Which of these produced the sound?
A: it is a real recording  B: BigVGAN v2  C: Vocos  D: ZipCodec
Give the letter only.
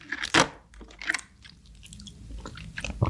A